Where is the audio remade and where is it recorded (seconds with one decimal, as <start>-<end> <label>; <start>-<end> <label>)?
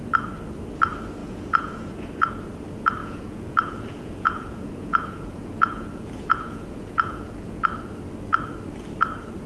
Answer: 0.0-1.2 recorded; 1.2-2.3 remade; 2.3-3.0 recorded; 3.0-7.6 remade; 7.6-9.5 recorded